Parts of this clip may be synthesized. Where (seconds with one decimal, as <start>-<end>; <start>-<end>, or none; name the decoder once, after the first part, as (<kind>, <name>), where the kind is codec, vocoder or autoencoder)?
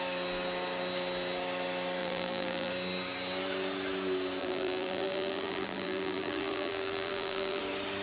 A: 2.0-2.7 (vocoder, BigVGAN v2); 4.4-7.6